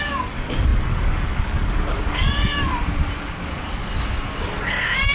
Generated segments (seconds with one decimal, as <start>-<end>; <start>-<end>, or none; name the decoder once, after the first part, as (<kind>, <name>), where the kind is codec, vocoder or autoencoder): 0.0-2.7 (codec, DAC); 3.3-3.8; 4.6-5.1